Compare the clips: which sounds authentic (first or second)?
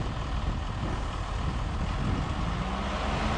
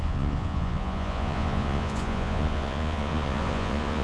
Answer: first